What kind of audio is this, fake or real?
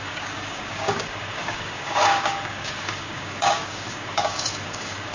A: fake